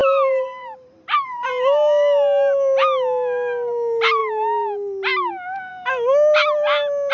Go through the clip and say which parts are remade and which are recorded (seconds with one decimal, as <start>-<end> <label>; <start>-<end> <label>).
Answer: 0.0-1.5 remade; 1.5-7.1 recorded